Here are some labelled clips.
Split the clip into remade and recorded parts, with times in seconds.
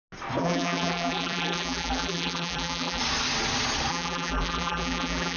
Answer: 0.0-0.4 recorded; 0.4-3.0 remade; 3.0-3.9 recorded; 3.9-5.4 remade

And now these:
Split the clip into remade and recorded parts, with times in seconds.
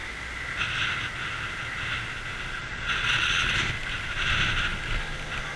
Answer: 0.0-2.6 recorded; 2.6-3.6 remade; 3.6-5.6 recorded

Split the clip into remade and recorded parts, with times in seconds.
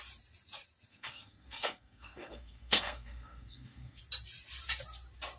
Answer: 0.0-0.9 recorded; 0.9-4.0 remade; 4.0-5.4 recorded